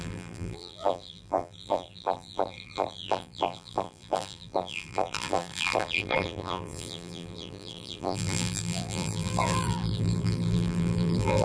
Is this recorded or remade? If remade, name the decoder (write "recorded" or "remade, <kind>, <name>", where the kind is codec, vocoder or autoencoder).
remade, vocoder, BigVGAN v2